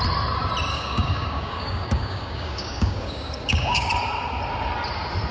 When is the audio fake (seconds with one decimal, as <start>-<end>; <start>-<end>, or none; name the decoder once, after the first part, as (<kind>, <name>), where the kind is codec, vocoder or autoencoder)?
0.7-3.9 (codec, DAC)